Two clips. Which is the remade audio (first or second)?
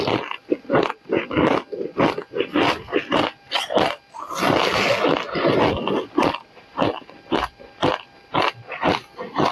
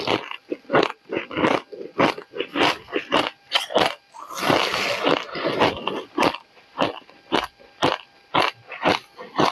second